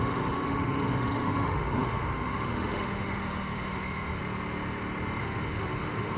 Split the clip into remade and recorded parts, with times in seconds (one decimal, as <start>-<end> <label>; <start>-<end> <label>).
0.0-4.2 remade; 4.2-5.2 recorded; 5.2-6.2 remade